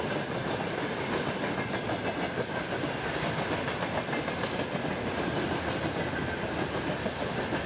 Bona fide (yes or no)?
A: yes